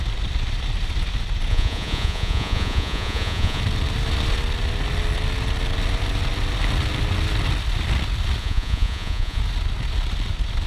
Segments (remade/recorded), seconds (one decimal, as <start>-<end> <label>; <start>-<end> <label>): 0.0-1.5 recorded; 1.5-3.6 remade; 3.6-8.4 recorded; 8.4-9.4 remade; 9.4-10.7 recorded